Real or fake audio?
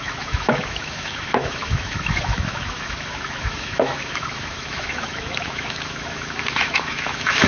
fake